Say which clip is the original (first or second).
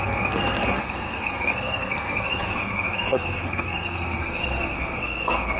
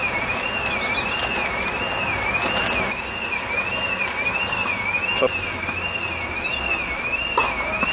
second